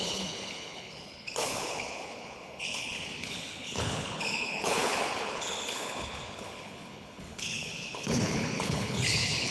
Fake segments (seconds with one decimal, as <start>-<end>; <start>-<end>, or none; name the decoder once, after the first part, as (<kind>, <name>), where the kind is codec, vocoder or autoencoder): 0.0-9.5 (codec, HILCodec)

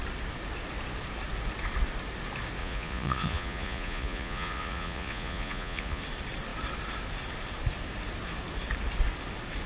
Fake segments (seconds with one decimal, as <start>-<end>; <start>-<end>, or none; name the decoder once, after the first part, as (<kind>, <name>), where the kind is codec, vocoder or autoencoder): 2.6-6.0 (vocoder, Vocos)

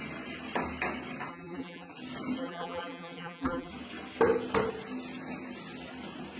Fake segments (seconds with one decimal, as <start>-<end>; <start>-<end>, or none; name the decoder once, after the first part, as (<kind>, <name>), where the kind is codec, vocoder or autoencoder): 1.3-1.9 (vocoder, BigVGAN v2); 2.4-3.7

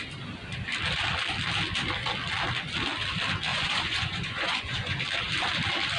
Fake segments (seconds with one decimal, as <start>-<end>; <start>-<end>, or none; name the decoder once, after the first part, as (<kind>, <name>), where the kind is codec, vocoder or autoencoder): 3.5-5.0 (vocoder, Vocos)

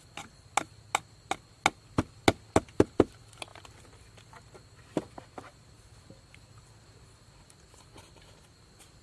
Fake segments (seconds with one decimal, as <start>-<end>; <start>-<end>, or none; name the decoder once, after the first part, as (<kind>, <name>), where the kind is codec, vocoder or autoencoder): none

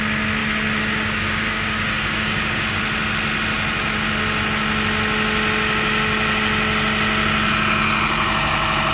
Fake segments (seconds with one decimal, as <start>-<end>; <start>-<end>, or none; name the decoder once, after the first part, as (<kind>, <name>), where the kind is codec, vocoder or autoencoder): 0.4-2.8 (codec, DAC)

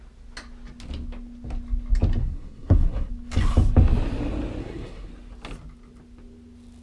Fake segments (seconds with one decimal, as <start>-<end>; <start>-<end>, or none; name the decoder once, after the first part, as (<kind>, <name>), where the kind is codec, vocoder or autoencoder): 2.2-3.1 (codec, SNAC); 4.6-5.1

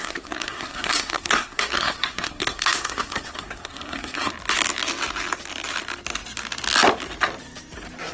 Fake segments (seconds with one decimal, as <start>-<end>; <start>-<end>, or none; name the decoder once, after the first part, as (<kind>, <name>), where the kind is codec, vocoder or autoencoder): 0.0-4.3 (codec, SNAC)